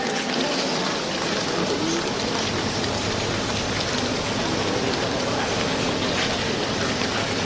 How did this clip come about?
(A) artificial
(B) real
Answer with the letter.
B